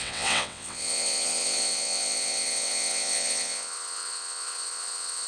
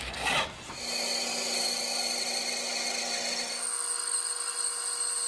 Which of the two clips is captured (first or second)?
second